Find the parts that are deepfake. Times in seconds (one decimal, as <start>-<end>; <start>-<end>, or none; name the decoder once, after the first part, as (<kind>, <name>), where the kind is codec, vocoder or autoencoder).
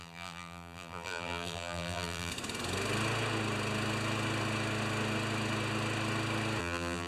0.0-2.3 (vocoder, BigVGAN v2); 6.6-7.1